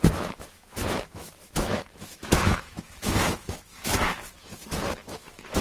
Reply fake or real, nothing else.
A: fake